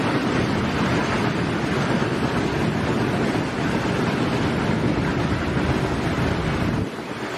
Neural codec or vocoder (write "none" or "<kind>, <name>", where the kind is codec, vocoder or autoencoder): none